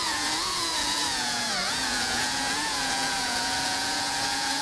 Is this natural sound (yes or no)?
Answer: no